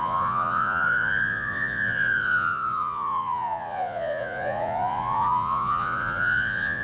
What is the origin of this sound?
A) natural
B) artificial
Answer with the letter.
B